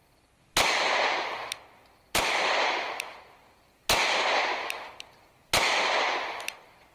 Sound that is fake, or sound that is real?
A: real